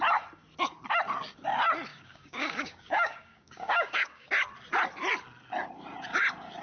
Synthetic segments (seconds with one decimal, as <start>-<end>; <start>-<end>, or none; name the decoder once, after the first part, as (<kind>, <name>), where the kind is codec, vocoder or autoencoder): 1.9-4.3 (codec, DAC)